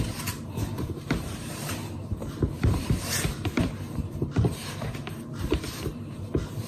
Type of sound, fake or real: fake